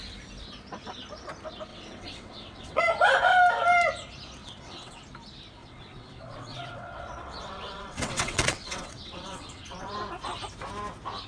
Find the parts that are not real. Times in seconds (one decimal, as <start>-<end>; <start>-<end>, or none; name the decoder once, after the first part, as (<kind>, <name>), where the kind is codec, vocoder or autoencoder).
1.7-2.8 (vocoder, WaveNeXt); 4.4-5.0; 5.6-9.9